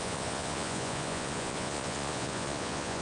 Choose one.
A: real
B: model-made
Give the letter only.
B